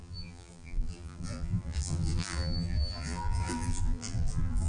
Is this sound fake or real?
fake